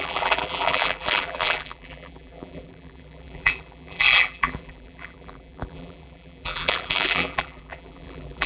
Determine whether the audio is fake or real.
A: fake